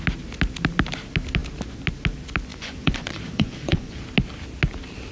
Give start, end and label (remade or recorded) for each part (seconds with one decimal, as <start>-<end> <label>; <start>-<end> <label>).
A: 0.0-2.5 recorded; 2.5-4.0 remade; 4.0-5.1 recorded